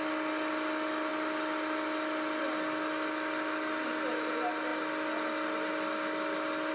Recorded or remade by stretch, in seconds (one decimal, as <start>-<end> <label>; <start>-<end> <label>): 0.0-6.7 recorded